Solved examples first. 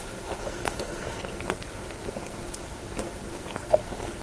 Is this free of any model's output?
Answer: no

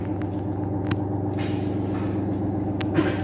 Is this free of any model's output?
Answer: yes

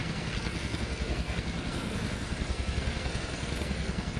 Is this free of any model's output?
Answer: no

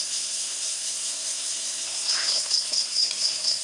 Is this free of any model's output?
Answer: no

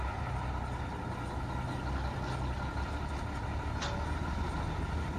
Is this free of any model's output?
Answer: yes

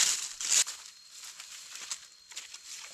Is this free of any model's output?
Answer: yes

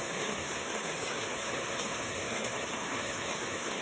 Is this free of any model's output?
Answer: no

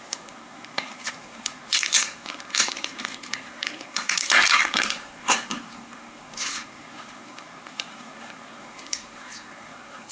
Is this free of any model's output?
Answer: no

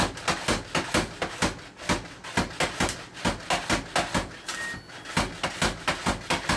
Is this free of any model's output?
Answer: yes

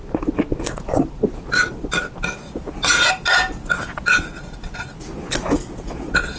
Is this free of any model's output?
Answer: yes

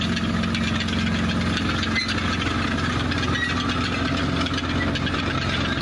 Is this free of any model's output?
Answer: yes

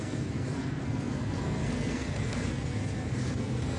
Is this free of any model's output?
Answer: no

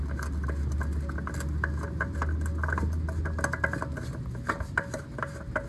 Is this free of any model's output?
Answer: yes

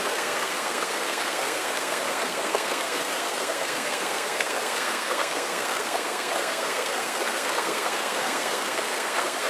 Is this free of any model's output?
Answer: no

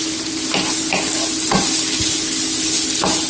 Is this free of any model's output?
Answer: yes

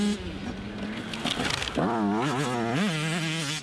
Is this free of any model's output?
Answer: yes